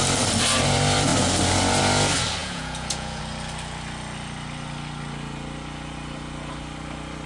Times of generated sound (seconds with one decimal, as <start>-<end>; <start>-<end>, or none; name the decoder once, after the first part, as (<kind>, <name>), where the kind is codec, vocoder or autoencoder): 2.4-3.2 (vocoder, Vocos)